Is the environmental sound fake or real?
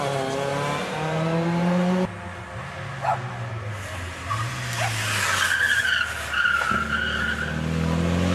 real